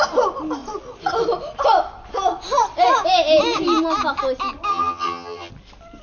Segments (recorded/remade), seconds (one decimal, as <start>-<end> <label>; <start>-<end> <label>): 0.0-4.7 recorded; 4.7-5.5 remade; 5.5-6.0 recorded